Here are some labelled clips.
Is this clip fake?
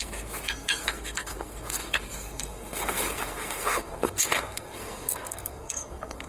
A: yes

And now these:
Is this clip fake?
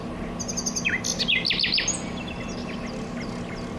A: no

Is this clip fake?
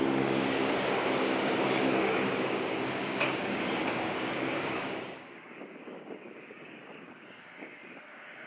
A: yes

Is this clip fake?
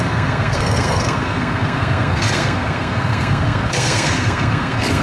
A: yes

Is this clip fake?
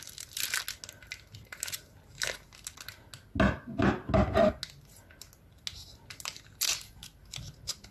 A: no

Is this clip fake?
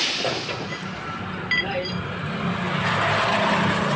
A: no